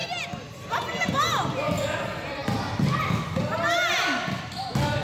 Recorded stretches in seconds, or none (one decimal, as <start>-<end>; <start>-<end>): 0.7-5.0